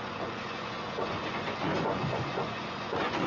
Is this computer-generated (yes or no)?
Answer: yes